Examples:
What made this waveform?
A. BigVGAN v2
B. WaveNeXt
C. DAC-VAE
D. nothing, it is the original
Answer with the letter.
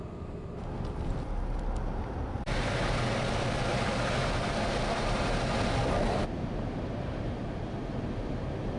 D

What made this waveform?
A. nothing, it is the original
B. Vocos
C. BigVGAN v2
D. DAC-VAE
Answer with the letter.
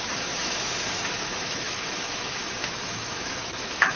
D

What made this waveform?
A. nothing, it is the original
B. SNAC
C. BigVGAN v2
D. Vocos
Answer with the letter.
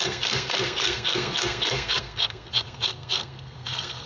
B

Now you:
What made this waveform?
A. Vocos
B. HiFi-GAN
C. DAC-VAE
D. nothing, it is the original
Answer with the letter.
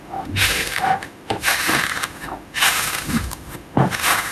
C